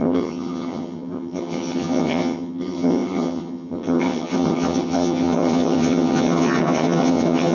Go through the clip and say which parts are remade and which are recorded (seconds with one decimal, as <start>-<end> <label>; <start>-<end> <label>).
0.0-7.5 remade